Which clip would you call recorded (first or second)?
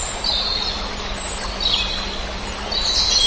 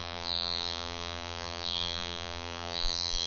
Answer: first